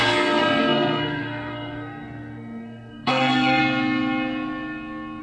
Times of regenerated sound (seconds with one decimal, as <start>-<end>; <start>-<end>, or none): 0.0-3.6